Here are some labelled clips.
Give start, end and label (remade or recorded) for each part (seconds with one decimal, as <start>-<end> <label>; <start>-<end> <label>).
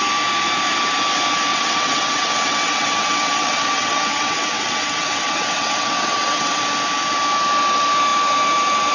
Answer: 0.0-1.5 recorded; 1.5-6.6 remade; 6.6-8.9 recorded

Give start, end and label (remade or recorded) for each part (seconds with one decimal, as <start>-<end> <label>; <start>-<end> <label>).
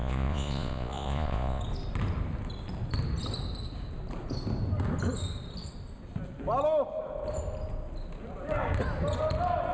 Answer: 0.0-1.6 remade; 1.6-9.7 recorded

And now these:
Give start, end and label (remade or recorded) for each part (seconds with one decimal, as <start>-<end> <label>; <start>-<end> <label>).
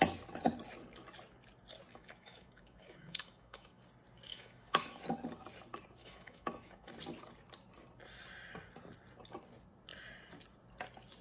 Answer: 0.0-1.9 recorded; 1.9-3.8 remade; 3.8-4.3 recorded; 4.3-5.0 remade; 5.0-6.0 recorded; 6.0-6.9 remade; 6.9-11.2 recorded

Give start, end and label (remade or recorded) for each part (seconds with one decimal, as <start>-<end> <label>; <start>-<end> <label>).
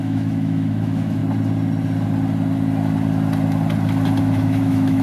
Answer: 0.0-1.2 remade; 1.2-4.2 recorded; 4.2-5.0 remade